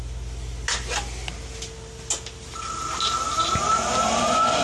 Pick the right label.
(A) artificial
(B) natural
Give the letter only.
B